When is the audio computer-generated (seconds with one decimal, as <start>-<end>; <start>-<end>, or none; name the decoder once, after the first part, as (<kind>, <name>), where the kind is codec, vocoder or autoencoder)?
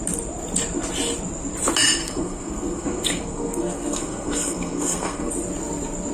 2.0-5.3 (codec, SNAC)